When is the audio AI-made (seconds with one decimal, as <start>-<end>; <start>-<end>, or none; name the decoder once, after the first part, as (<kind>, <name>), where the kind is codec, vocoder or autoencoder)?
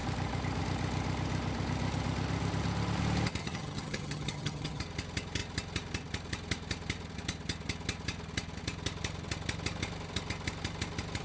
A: 3.4-4.8 (vocoder, HiFi-GAN)